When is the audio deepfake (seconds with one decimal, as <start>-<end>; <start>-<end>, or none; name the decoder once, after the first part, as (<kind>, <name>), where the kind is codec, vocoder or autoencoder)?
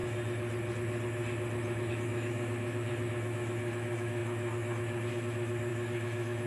1.9-6.5 (autoencoder, DAC-VAE)